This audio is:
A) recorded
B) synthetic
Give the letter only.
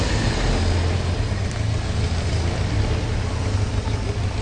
A